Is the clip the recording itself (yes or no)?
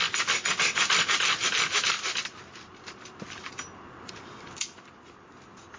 yes